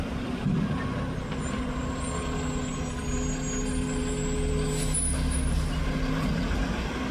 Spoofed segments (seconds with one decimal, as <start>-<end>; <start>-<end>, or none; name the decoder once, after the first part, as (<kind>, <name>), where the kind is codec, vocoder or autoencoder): none